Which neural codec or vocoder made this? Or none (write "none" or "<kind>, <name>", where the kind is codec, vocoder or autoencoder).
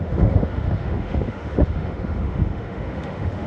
autoencoder, DAC-VAE